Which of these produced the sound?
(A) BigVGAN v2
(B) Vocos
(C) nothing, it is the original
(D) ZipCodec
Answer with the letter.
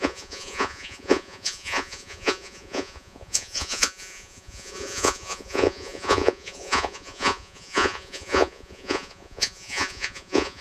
B